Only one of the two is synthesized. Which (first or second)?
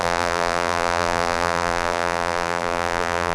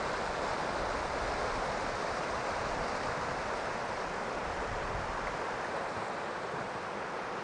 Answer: first